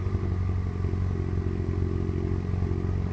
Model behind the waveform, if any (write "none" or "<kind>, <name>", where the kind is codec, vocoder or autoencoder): none